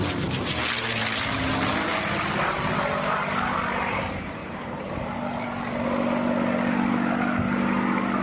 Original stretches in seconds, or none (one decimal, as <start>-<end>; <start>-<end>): 0.0-4.4; 4.9-8.2